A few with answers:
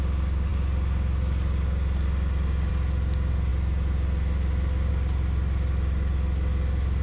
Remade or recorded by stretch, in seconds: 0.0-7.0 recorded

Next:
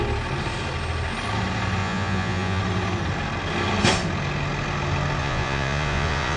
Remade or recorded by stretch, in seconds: 0.0-1.8 recorded; 1.8-2.6 remade; 2.6-5.2 recorded; 5.2-6.4 remade

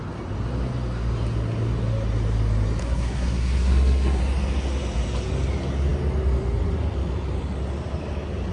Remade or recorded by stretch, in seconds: 0.0-2.8 recorded; 2.8-4.2 remade; 4.2-8.5 recorded

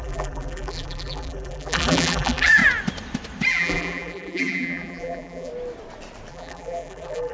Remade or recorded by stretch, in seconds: 0.0-2.6 remade; 2.6-3.5 recorded; 3.5-5.5 remade; 5.5-6.3 recorded; 6.3-7.3 remade

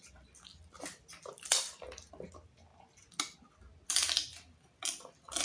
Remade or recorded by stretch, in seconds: 0.0-5.4 recorded

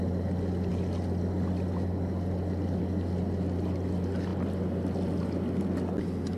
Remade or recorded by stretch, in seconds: 0.0-6.4 recorded